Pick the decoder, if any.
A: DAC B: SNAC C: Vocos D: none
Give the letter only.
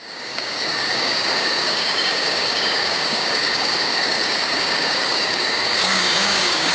A